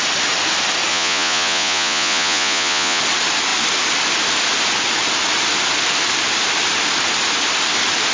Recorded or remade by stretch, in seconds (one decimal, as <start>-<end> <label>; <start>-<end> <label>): 0.0-0.9 recorded; 0.9-3.0 remade; 3.0-8.1 recorded